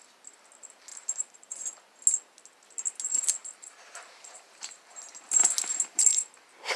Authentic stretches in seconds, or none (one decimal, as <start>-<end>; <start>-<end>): 0.0-0.9; 1.6-3.4; 4.9-5.4; 6.1-6.8